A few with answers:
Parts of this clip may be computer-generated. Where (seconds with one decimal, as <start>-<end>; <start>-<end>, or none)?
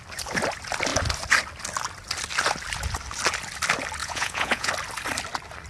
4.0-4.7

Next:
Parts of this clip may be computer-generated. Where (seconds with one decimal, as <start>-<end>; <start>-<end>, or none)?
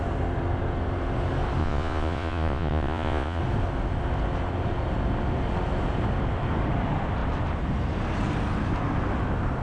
1.6-3.4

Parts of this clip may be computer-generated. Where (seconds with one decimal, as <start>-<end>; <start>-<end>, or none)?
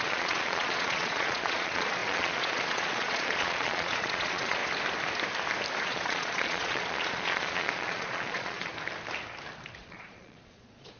0.0-4.6; 5.8-8.7; 9.8-11.0